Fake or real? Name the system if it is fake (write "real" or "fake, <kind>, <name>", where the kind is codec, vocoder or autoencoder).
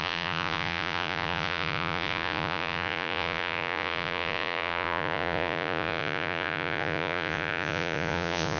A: fake, vocoder, Vocos